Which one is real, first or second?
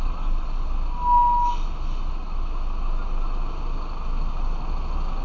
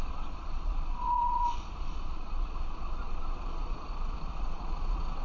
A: first